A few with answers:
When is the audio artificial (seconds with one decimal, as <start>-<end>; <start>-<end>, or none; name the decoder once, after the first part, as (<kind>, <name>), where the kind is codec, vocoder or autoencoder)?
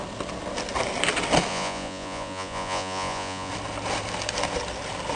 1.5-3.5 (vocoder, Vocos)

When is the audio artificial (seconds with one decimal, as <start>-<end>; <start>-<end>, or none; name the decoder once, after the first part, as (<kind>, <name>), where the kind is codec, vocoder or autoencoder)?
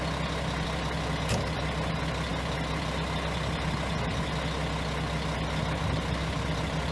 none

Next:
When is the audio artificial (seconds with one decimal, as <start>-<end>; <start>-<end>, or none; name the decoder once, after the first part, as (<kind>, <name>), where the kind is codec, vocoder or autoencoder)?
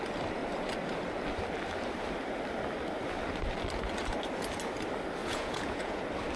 5.2-6.0 (vocoder, Vocos)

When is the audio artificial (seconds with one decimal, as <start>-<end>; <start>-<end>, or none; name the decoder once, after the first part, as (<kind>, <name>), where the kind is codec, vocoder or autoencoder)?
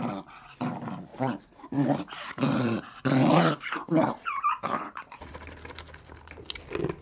1.1-5.3 (vocoder, Vocos)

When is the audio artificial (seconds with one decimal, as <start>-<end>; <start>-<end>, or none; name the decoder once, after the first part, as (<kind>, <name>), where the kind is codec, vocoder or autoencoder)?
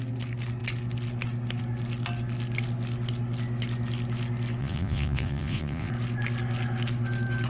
4.6-5.9 (vocoder, Vocos)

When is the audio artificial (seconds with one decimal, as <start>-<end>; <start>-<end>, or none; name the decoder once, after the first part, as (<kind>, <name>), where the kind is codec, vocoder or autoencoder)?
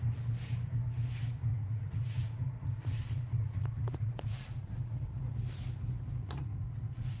1.5-5.2 (vocoder, Vocos); 6.2-7.2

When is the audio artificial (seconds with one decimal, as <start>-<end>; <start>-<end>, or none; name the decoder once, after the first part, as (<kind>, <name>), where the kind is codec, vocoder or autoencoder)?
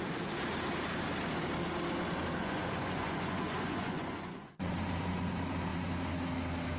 2.4-4.7 (vocoder, Vocos)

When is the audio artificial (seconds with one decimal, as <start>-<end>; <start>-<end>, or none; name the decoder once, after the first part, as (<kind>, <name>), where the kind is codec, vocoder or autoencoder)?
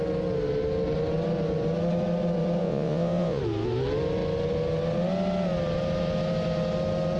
2.6-3.4 (vocoder, Vocos)